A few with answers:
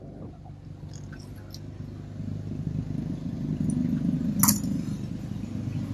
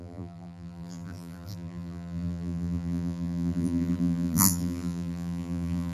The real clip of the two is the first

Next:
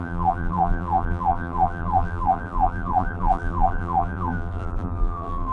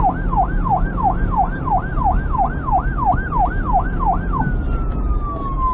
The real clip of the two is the second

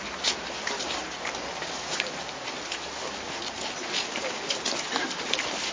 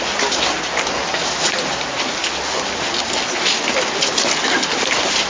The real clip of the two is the second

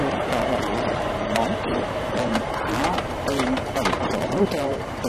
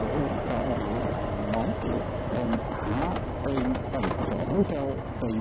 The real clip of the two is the second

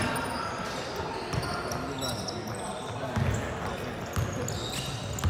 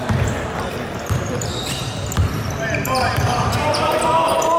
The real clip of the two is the first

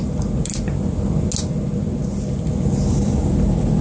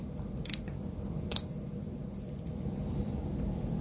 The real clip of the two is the first